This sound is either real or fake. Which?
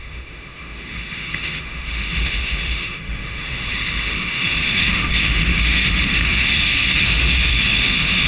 fake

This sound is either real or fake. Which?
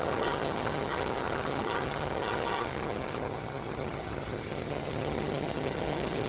fake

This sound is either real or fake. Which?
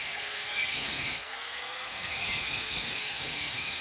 fake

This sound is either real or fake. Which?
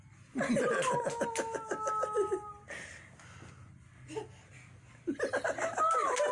real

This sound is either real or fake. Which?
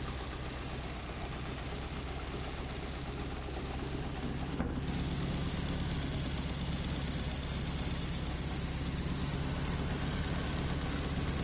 real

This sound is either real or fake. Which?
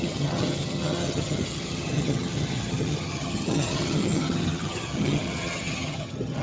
fake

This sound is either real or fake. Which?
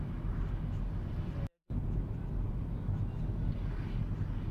real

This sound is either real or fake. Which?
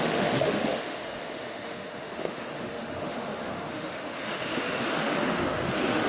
fake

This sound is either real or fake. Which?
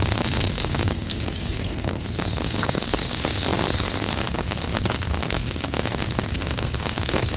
fake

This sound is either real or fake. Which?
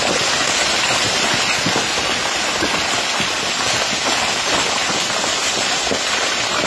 real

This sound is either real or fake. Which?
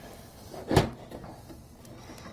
real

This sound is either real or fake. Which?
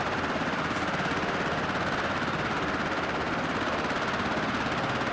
real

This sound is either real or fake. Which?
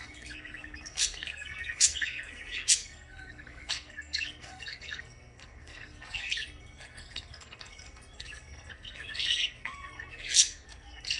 fake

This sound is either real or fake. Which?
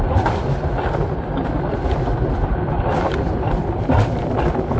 real